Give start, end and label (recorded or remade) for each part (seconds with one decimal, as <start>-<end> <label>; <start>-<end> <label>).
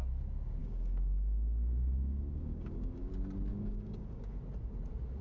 0.0-0.6 recorded; 0.6-3.1 remade; 3.1-3.5 recorded; 3.5-4.4 remade; 4.4-5.2 recorded